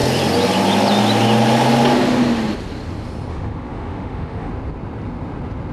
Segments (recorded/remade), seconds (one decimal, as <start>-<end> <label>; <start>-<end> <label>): 0.0-3.3 recorded; 3.3-4.5 remade; 4.5-5.7 recorded